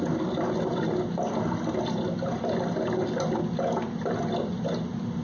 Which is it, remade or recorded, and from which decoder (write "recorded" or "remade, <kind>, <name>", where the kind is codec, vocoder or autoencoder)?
recorded